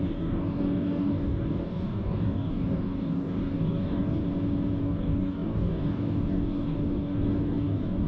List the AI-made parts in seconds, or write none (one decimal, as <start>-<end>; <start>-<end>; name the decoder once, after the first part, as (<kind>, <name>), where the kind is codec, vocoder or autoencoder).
0.0-4.2 (codec, DAC); 4.8-8.1